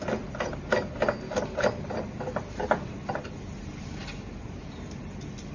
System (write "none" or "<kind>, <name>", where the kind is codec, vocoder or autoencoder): none